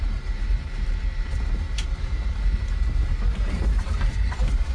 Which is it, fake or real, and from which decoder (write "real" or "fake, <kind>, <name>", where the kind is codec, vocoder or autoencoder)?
fake, vocoder, BigVGAN v2